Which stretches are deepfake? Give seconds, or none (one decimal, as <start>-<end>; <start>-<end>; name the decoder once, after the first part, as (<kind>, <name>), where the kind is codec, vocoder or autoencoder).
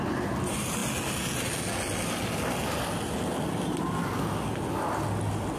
none